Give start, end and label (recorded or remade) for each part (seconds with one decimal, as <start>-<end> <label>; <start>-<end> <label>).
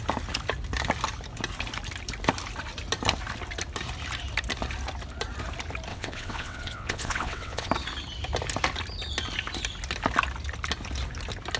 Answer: 0.0-5.9 recorded; 5.9-7.7 remade; 7.7-11.6 recorded